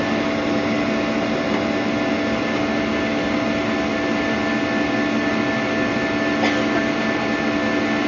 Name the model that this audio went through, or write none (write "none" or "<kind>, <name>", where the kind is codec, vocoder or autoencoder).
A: none